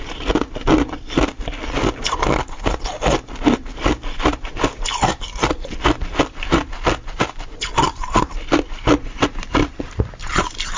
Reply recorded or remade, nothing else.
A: recorded